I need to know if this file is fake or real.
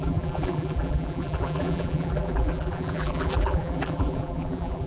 fake